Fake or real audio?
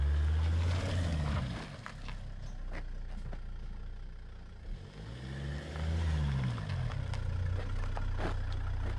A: real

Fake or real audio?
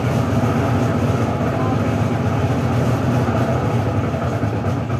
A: real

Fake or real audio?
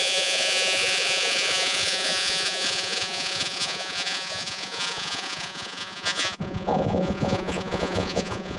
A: fake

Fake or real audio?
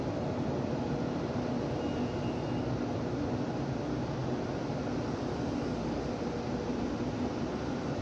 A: real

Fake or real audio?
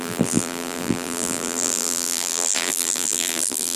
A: fake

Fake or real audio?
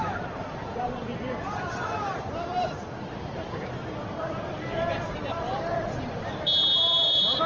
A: fake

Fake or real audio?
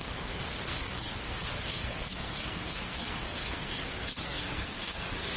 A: fake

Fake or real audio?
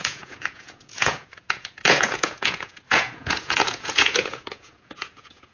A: fake